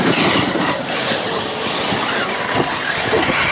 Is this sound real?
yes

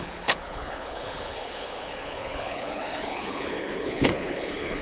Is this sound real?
no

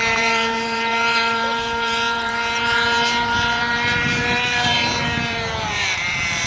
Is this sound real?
no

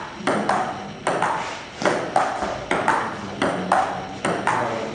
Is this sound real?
yes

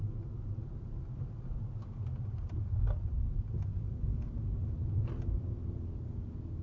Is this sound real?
yes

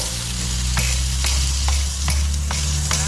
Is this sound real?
yes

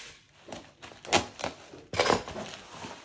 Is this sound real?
yes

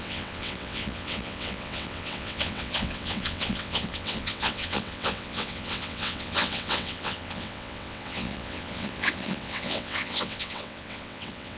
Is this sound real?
no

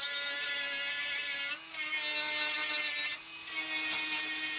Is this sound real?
yes